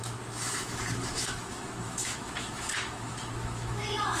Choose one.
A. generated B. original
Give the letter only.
A